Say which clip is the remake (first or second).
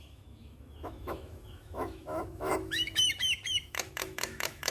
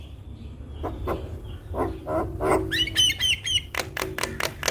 first